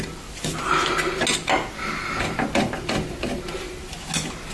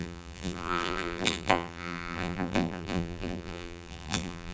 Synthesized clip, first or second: second